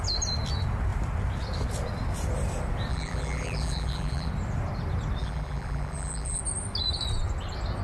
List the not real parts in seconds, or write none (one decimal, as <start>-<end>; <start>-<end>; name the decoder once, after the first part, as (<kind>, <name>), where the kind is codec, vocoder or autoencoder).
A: 2.9-4.3 (vocoder, BigVGAN v2); 5.2-6.4

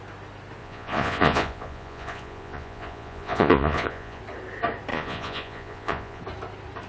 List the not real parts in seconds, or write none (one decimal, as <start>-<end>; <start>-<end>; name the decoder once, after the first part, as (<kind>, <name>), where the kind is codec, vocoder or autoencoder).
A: 0.6-4.2 (vocoder, Vocos); 4.9-6.2

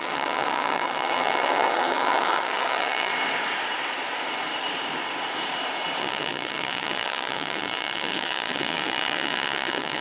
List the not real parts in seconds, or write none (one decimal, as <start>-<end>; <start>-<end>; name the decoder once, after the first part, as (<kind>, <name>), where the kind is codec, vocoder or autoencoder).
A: 0.0-3.1 (vocoder, WaveNeXt); 6.0-10.0

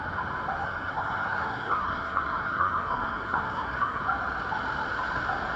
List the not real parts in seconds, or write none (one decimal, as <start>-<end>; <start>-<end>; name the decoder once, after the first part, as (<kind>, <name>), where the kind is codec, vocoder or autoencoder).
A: 0.6-4.0 (codec, SNAC)